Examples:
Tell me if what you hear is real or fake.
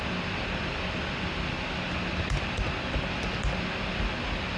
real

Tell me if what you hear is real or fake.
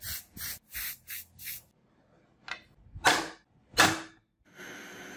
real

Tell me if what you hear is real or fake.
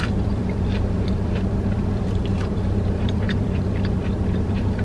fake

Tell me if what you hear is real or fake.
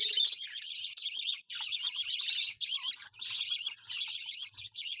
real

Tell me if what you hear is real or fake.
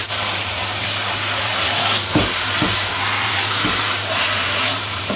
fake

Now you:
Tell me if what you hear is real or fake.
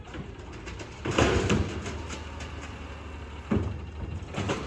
real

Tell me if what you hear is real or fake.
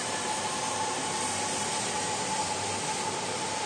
real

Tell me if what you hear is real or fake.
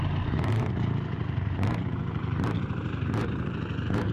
fake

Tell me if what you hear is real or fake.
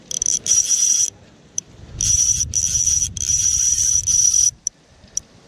fake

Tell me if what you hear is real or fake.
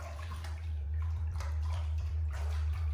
fake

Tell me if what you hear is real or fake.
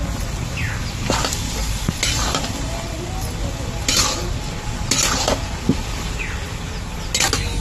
real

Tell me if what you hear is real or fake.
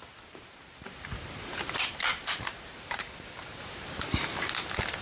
fake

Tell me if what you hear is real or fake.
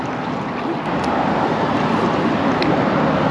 real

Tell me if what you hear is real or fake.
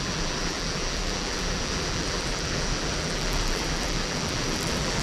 fake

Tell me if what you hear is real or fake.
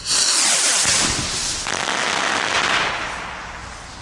real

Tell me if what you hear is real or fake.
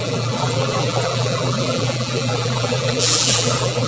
fake